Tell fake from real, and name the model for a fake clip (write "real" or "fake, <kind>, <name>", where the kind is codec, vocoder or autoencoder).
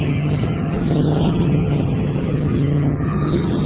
fake, vocoder, HiFi-GAN